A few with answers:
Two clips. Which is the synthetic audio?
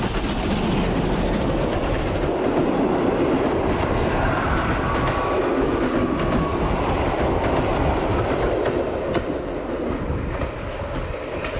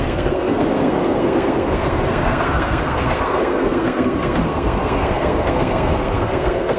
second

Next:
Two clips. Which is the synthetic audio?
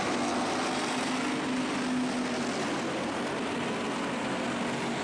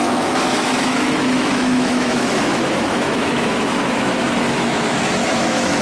second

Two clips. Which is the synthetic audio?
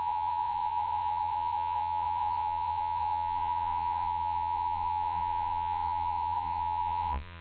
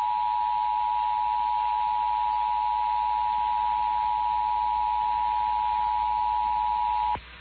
first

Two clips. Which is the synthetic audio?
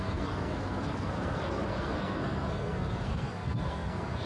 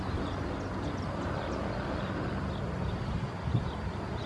first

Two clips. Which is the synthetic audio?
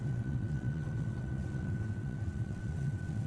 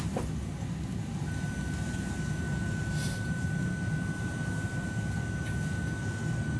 first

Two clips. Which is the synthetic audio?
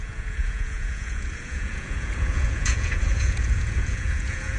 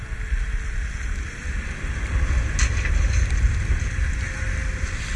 first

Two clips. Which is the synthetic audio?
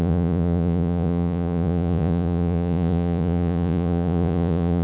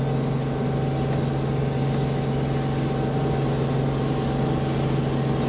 first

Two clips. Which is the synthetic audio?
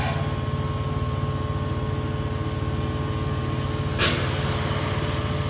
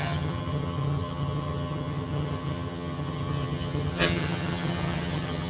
second